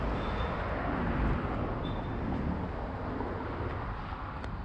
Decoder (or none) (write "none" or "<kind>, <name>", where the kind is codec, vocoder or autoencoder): none